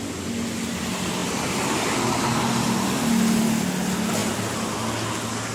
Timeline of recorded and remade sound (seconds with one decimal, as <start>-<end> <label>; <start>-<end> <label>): 0.0-5.5 recorded